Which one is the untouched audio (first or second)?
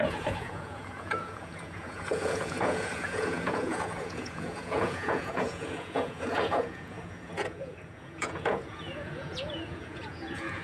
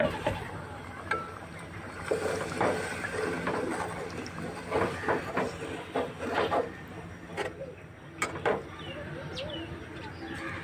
second